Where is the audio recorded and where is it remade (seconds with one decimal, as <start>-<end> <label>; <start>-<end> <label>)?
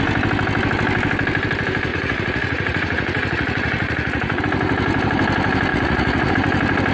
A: 0.0-1.9 recorded; 1.9-4.4 remade; 4.4-5.7 recorded; 5.7-6.3 remade; 6.3-6.9 recorded